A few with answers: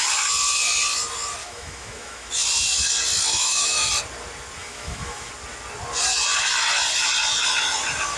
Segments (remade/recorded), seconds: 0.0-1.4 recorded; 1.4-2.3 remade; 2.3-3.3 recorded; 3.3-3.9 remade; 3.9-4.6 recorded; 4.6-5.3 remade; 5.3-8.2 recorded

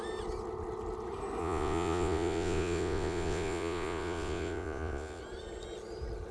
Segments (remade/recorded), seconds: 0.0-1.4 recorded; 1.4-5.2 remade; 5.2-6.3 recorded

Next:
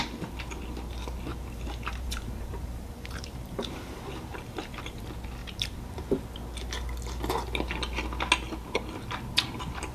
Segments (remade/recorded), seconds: 0.0-1.3 recorded; 1.3-5.0 remade; 5.0-5.4 recorded; 5.4-6.0 remade; 6.0-9.9 recorded

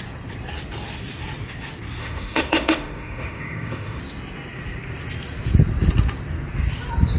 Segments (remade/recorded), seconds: 0.0-2.0 recorded; 2.0-4.0 remade; 4.0-7.2 recorded